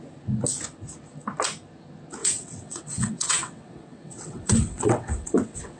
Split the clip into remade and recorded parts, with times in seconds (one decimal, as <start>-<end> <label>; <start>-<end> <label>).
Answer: 0.0-2.2 recorded; 2.2-5.8 remade